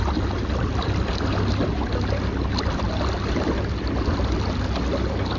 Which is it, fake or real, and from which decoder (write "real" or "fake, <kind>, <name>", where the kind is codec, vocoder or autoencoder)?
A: real